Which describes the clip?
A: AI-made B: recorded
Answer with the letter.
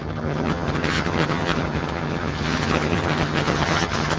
A